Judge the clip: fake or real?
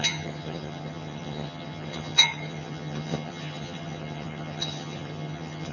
fake